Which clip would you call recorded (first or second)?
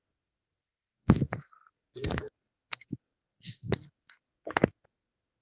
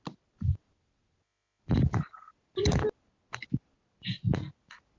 second